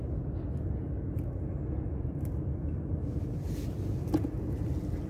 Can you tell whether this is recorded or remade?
recorded